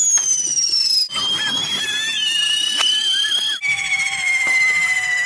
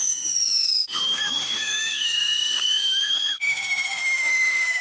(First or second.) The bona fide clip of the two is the first